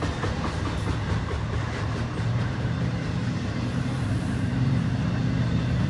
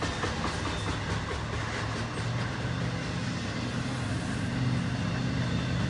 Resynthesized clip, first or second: first